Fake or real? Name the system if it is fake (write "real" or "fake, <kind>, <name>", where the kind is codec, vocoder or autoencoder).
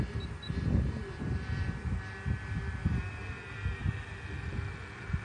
fake, vocoder, BigVGAN v2